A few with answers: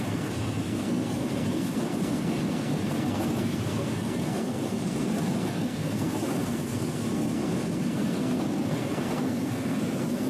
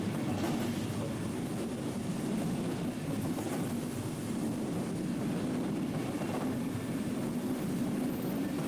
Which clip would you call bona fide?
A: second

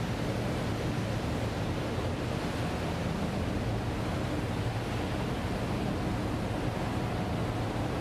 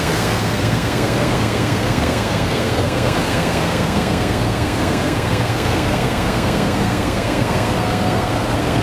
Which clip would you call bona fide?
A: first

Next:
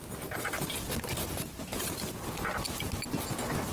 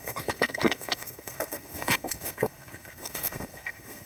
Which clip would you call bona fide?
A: first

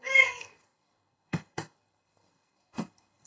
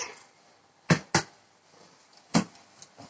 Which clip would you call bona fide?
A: second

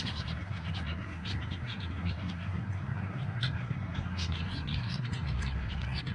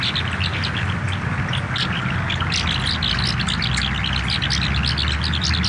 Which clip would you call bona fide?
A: second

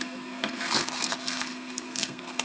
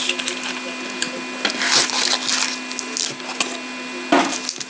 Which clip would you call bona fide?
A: second